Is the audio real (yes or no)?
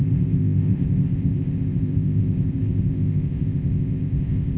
no